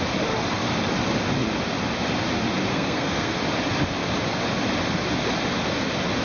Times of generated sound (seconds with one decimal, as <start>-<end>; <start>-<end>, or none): 2.7-3.4